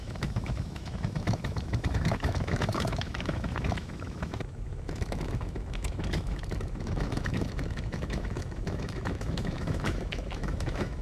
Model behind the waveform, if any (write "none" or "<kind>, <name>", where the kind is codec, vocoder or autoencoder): autoencoder, DAC-VAE